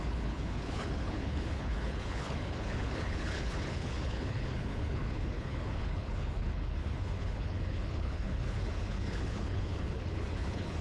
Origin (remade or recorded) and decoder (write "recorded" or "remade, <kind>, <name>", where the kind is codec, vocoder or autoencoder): remade, codec, HILCodec